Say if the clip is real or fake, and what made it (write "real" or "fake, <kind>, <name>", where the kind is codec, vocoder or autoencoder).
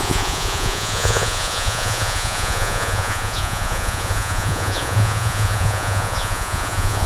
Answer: fake, vocoder, Vocos